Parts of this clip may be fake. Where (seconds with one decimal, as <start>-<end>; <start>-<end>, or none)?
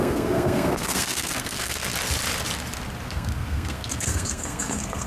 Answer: 0.0-1.9; 3.1-5.1